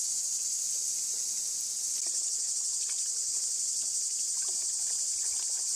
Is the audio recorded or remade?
remade